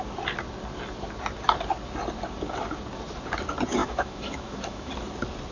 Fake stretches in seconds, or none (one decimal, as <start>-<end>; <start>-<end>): 3.8-4.9